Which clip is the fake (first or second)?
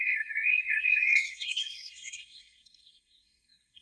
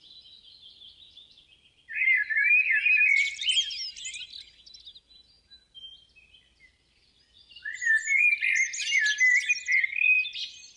first